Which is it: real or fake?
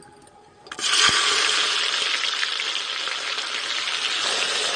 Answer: real